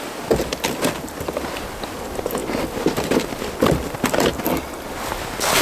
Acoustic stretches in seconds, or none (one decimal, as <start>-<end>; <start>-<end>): 0.0-5.6